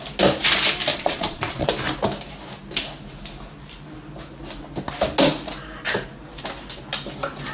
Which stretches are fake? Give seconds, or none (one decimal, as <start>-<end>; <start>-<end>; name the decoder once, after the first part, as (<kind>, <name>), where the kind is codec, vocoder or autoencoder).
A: 0.9-1.7 (vocoder, Vocos)